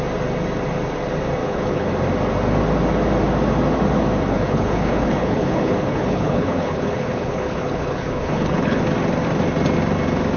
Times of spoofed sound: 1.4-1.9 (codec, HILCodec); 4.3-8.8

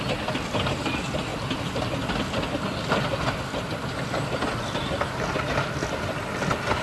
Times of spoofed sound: none

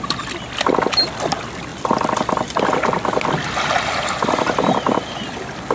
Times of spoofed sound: none

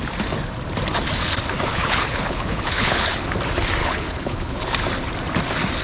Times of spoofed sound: 1.7-3.3 (codec, HILCodec); 3.8-4.7

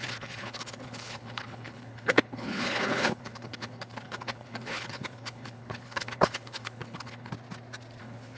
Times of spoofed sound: 0.0-7.3 (codec, HILCodec); 8.0-8.4

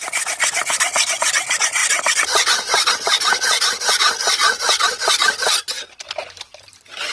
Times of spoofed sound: none